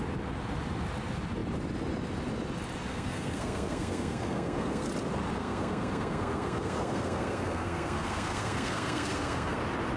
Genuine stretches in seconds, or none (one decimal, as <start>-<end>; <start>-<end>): 0.0-2.9; 4.9-5.4; 9.6-10.0